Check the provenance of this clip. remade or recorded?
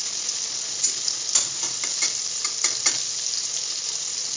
recorded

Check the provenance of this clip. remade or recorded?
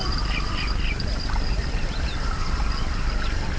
recorded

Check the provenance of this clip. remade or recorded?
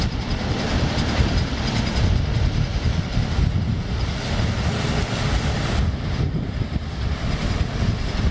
recorded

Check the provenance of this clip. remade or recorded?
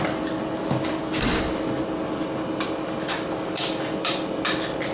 recorded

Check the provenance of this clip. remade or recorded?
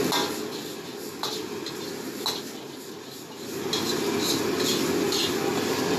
recorded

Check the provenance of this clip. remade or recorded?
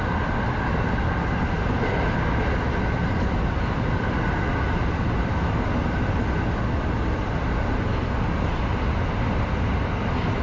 recorded